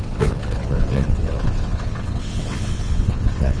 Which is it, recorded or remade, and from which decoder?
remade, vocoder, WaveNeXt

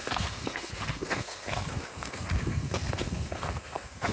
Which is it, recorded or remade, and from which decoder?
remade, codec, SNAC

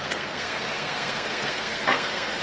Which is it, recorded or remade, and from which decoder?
remade, codec, SNAC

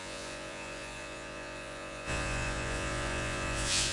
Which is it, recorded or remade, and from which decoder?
remade, vocoder, Vocos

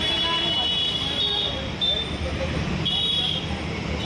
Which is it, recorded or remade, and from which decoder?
recorded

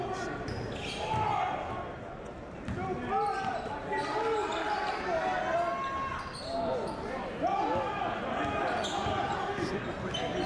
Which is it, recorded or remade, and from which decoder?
recorded